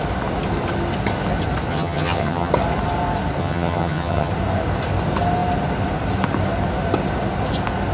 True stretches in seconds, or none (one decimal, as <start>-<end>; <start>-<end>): 0.0-1.7; 2.5-3.4; 4.3-7.9